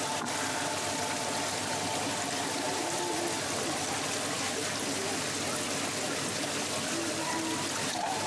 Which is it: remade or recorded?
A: recorded